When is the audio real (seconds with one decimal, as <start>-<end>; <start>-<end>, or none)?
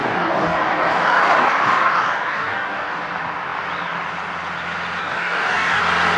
3.0-5.0; 5.8-6.2